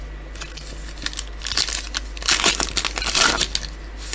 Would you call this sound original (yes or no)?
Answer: yes